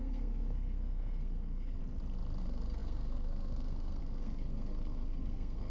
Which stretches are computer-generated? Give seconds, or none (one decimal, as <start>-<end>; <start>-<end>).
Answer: 0.0-1.8; 2.4-5.7